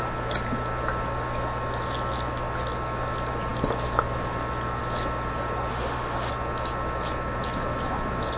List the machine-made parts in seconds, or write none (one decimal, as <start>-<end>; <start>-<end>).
5.7-6.3